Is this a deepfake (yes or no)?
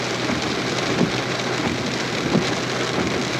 no